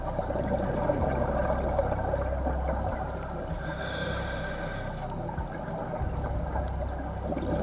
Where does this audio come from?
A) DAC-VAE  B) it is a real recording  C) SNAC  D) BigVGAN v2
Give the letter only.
B